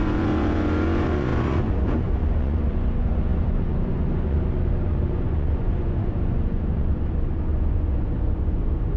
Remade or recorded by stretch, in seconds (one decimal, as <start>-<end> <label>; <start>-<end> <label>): 0.0-9.0 remade